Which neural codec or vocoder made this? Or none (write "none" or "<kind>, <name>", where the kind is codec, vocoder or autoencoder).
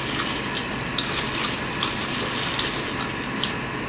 none